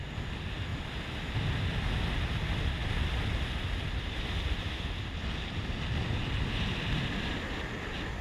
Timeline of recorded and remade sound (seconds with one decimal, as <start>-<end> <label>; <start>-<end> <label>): 0.0-8.2 recorded